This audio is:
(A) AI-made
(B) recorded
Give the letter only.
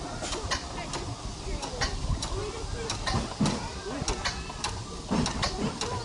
B